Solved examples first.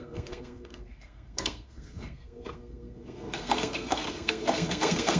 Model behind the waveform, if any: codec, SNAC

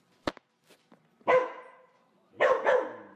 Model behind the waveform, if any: none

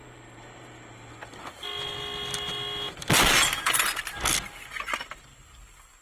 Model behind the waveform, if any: none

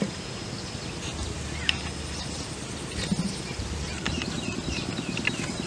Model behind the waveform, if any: none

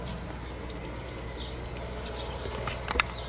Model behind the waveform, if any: none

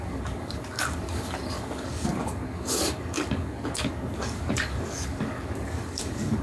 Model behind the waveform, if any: codec, DAC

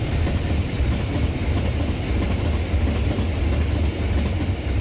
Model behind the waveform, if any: none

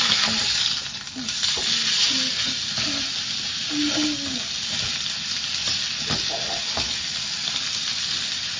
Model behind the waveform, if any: none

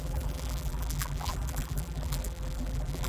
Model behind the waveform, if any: vocoder, BigVGAN v2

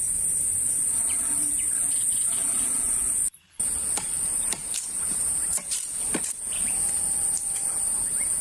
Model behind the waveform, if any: vocoder, BigVGAN v2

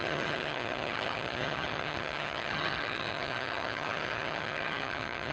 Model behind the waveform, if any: vocoder, HiFi-GAN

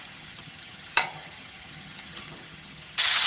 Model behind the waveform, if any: vocoder, HiFi-GAN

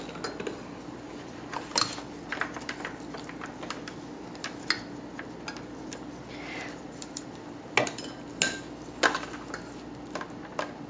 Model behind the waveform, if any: none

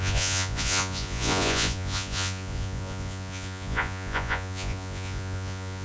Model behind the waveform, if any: vocoder, Vocos